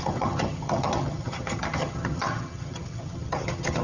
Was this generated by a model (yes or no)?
yes